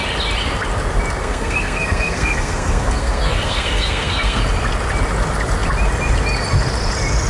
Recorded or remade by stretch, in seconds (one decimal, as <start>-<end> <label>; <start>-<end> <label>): 0.0-1.2 recorded; 1.2-4.4 remade; 4.4-7.3 recorded